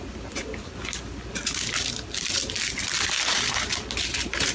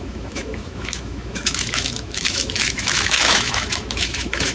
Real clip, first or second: first